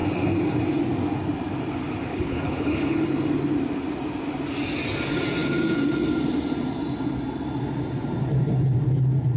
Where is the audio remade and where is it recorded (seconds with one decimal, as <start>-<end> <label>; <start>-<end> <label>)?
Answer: 0.0-2.1 recorded; 2.1-3.1 remade; 3.1-9.4 recorded